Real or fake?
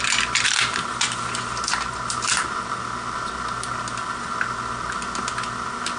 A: real